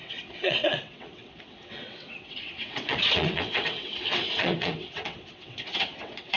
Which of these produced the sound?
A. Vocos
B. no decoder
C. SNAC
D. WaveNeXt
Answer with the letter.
D